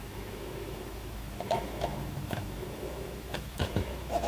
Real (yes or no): no